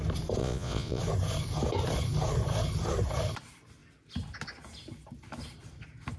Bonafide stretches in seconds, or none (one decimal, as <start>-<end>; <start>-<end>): 0.0-0.4; 1.0-6.2